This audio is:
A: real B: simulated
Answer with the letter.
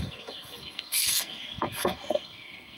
B